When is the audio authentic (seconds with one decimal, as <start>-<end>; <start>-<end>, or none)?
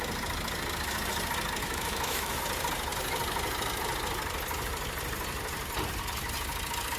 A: 0.0-1.6; 2.4-7.0